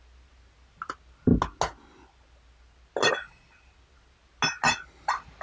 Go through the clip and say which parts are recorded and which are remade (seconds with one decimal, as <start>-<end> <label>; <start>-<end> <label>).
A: 0.0-5.4 recorded